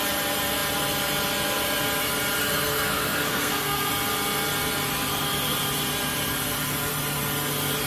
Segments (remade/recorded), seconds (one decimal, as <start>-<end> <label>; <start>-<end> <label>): 0.0-2.4 recorded; 2.4-3.9 remade; 3.9-7.9 recorded